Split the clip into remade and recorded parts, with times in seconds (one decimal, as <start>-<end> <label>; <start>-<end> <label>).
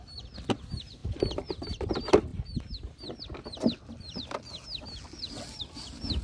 0.0-6.2 recorded